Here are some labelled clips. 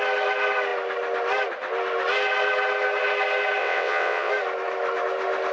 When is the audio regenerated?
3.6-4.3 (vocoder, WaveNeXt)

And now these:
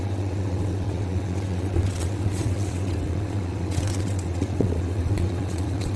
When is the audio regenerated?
0.0-6.0 (vocoder, WaveNeXt)

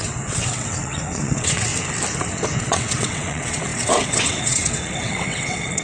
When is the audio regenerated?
0.0-1.7 (vocoder, WaveNeXt); 2.6-5.8

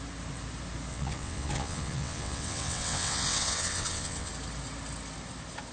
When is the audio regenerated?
0.9-4.3 (vocoder, WaveNeXt)

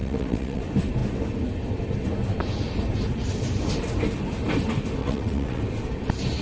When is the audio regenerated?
0.0-0.6 (vocoder, WaveNeXt); 5.0-5.6

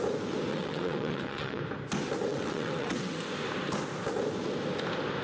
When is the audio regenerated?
0.5-1.6 (vocoder, WaveNeXt); 2.3-3.2

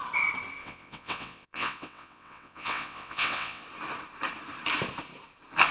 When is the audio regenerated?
0.6-3.6 (vocoder, WaveNeXt)